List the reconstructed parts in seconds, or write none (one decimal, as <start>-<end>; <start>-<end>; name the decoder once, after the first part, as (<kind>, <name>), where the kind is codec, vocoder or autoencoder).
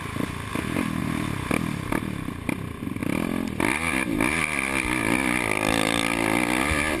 1.0-1.5 (vocoder, BigVGAN v2)